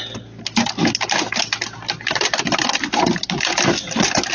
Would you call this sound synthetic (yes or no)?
no